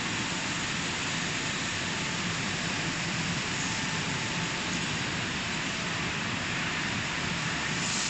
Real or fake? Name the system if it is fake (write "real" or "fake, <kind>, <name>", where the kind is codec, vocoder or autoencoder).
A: fake, vocoder, BigVGAN v2